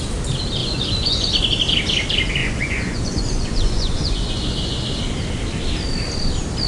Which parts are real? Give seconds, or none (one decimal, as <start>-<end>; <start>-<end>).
0.0-0.6; 1.3-2.4; 5.0-6.7